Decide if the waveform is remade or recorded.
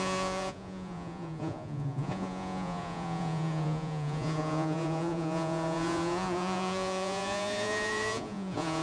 remade